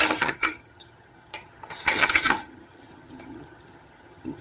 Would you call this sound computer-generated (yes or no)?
yes